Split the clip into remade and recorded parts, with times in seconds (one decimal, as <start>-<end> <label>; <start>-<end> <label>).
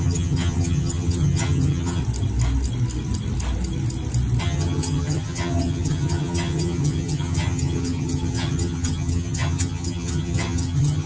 0.0-2.0 remade; 2.0-4.4 recorded; 4.4-11.1 remade